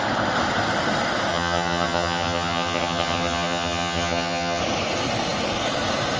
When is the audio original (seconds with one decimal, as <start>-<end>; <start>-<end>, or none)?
0.0-1.3; 4.6-6.2